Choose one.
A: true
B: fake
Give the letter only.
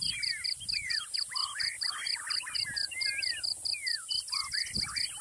A